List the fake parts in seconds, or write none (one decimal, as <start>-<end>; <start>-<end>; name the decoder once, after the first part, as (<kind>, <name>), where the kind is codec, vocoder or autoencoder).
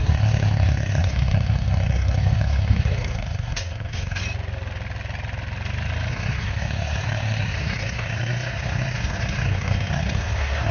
0.0-4.2 (codec, SNAC); 6.1-10.7